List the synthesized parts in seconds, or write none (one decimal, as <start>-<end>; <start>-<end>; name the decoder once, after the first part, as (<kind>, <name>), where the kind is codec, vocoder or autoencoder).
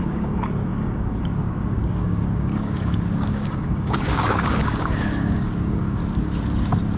0.0-6.0 (codec, DAC)